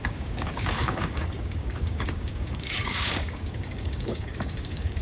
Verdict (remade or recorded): remade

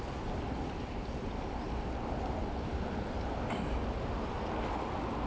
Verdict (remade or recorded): recorded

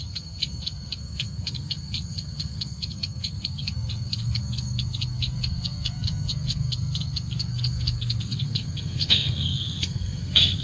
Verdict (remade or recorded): remade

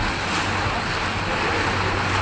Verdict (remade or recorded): recorded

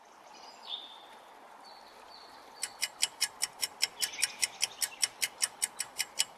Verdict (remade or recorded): recorded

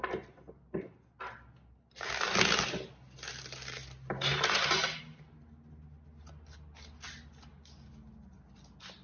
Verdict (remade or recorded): recorded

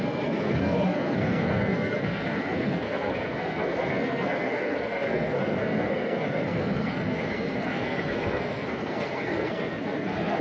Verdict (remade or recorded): remade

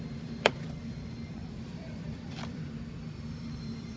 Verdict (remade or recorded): remade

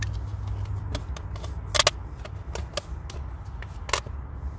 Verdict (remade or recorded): recorded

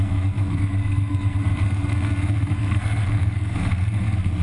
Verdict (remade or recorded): remade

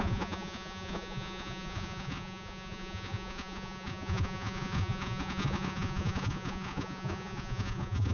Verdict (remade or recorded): remade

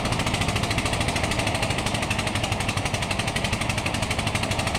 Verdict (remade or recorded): recorded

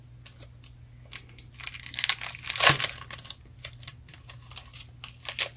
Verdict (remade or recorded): recorded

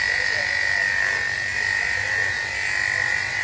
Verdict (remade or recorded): recorded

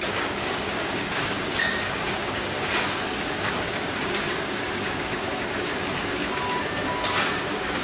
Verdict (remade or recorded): remade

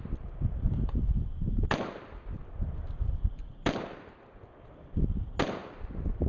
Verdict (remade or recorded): recorded